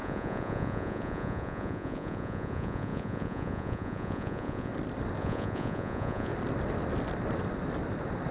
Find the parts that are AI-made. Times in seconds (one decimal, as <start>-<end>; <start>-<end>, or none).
0.0-4.7; 5.2-6.3